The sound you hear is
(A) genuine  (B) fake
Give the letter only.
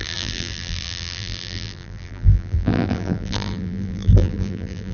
B